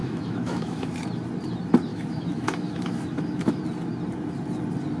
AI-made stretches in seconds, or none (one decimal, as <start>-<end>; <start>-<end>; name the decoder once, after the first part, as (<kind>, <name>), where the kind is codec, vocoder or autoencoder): 0.0-0.9 (autoencoder, DAC-VAE); 1.9-3.6